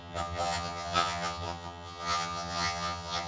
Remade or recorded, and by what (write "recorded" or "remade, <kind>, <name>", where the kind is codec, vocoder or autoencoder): remade, vocoder, HiFi-GAN